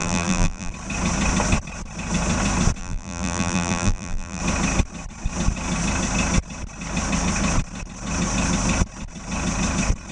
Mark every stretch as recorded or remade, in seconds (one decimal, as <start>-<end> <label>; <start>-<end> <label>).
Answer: 0.0-0.7 remade; 0.7-2.8 recorded; 2.8-4.4 remade; 4.4-10.1 recorded